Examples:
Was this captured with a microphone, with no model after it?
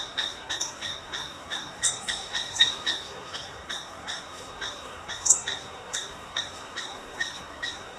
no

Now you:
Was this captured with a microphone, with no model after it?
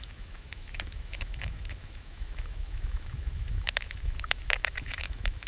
no